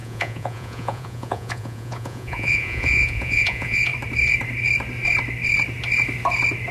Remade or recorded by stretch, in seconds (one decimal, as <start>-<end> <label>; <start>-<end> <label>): 0.0-3.9 remade; 3.9-6.7 recorded